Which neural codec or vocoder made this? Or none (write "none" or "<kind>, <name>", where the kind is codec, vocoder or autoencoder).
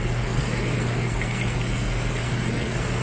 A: codec, SNAC